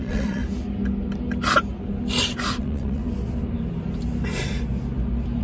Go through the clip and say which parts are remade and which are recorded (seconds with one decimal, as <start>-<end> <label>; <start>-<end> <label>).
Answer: 0.0-0.4 remade; 0.4-2.6 recorded; 2.6-3.0 remade; 3.0-5.4 recorded